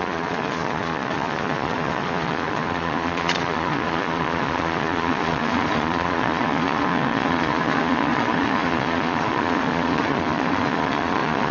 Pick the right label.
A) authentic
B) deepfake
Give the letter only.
B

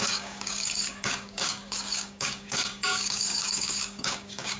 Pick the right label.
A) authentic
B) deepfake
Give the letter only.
B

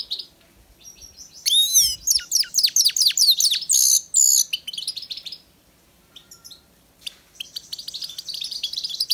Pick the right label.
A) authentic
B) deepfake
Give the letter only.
A